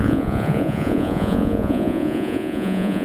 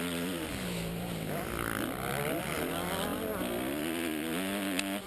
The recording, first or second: second